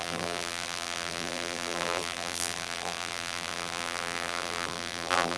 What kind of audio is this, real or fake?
fake